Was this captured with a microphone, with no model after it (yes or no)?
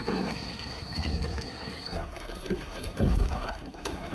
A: no